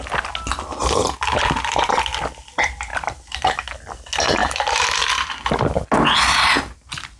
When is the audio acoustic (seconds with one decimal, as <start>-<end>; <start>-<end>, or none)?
0.0-0.8; 1.8-2.9; 3.6-4.4; 5.1-7.2